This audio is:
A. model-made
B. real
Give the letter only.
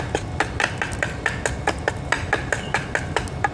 B